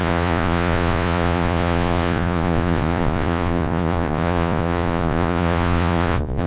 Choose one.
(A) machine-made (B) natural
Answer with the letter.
A